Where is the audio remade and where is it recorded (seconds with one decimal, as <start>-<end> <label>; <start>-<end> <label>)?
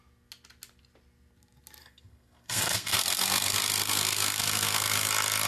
0.0-1.8 recorded; 1.8-5.1 remade; 5.1-5.5 recorded